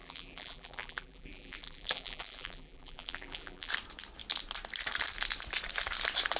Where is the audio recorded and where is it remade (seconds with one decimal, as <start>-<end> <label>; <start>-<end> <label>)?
0.0-3.7 remade; 3.7-6.4 recorded

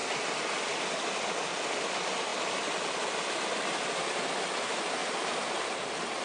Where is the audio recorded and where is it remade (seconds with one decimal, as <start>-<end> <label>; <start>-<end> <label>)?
0.0-5.0 recorded; 5.0-6.2 remade

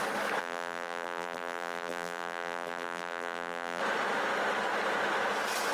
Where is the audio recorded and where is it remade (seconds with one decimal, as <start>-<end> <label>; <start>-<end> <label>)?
0.0-0.4 recorded; 0.4-3.8 remade; 3.8-5.7 recorded

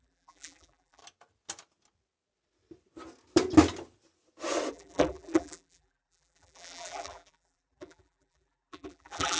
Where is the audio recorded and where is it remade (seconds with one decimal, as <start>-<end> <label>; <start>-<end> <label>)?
0.0-1.0 remade; 1.0-4.7 recorded; 4.7-9.4 remade

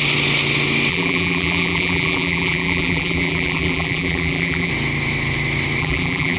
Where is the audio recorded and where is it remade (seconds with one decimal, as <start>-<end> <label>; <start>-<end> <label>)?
0.0-0.9 recorded; 0.9-4.7 remade; 4.7-5.8 recorded; 5.8-6.4 remade